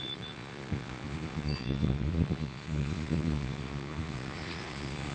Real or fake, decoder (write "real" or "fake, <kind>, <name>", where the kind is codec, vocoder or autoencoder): fake, vocoder, Vocos